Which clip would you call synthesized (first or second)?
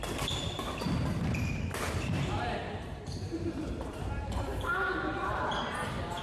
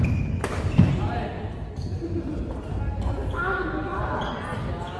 first